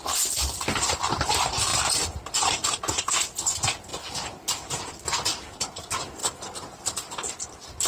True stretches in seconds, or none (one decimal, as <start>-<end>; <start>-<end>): 0.0-1.7; 2.7-6.2; 7.3-7.9